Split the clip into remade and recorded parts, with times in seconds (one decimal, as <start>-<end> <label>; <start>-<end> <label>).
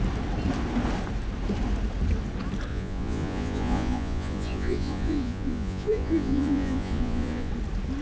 0.0-2.7 recorded; 2.7-7.5 remade; 7.5-8.0 recorded